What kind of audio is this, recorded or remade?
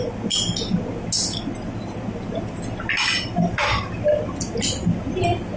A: recorded